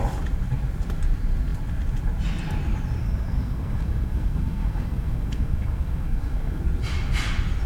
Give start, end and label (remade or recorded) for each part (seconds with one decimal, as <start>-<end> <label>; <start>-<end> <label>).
0.0-3.0 recorded; 3.0-6.6 remade; 6.6-7.7 recorded